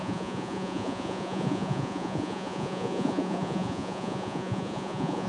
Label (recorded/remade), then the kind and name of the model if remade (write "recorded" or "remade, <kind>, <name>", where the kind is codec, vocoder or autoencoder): remade, vocoder, Vocos